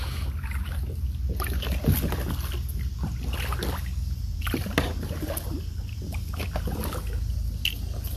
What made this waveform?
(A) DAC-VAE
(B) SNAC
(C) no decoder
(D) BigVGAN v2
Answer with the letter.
C